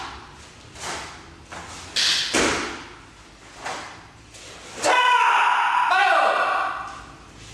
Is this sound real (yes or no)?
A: yes